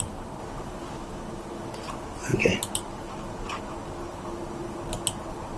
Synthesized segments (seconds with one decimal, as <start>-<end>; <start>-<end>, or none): none